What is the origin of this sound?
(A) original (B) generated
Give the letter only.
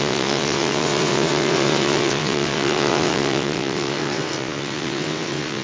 B